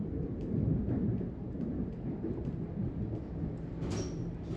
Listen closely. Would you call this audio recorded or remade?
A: recorded